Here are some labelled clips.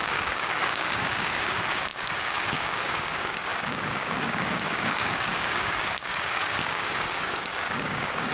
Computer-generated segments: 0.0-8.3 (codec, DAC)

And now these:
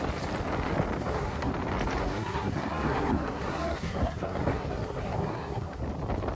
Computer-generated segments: 1.0-1.5 (codec, SNAC); 2.0-5.8

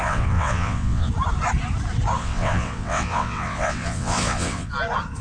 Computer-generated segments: 0.0-1.1 (vocoder, WaveNeXt); 2.2-4.7

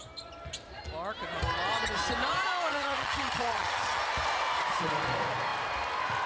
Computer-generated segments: 2.7-4.0 (vocoder, HiFi-GAN)

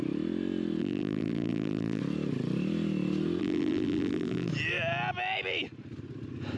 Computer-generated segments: 0.8-2.0 (vocoder, BigVGAN v2); 3.4-4.5